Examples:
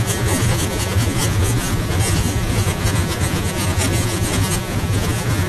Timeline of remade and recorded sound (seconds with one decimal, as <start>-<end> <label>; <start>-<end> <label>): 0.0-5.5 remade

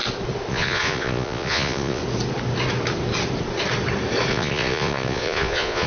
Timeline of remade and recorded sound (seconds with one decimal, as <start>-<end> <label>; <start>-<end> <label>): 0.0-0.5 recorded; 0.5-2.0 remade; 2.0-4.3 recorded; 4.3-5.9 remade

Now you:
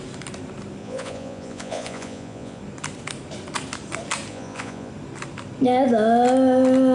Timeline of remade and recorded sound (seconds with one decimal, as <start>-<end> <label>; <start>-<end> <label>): 0.0-0.8 recorded; 0.8-2.6 remade; 2.6-4.3 recorded; 4.3-4.9 remade; 4.9-6.9 recorded

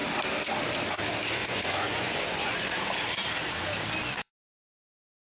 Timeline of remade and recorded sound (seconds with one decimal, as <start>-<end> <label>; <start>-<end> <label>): 0.0-1.4 recorded; 1.4-2.8 remade; 2.8-5.3 recorded